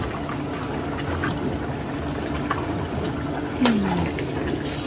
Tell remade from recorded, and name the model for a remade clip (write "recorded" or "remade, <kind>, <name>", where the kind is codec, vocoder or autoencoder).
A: recorded